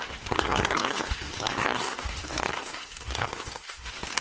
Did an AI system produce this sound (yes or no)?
yes